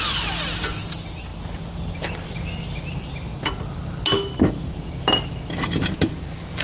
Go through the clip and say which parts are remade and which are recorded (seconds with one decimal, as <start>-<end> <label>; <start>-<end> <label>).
0.0-6.6 recorded